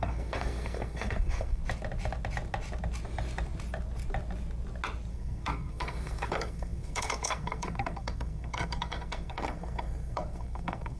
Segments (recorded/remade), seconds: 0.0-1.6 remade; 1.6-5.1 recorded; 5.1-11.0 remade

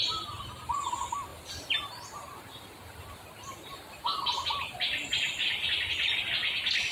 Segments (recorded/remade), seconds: 0.0-1.3 recorded; 1.3-5.4 remade; 5.4-6.9 recorded